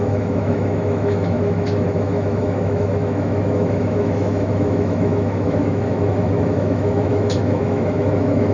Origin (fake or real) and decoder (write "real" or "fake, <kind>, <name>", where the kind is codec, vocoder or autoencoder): fake, autoencoder, DAC-VAE